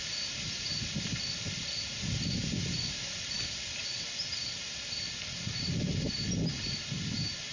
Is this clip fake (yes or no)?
no